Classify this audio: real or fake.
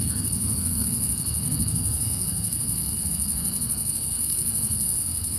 fake